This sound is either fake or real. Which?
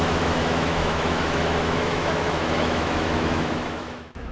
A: fake